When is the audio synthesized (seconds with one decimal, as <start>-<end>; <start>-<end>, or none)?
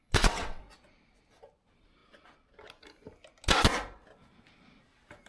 0.0-0.6